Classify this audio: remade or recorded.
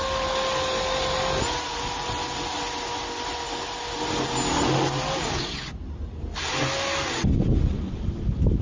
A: recorded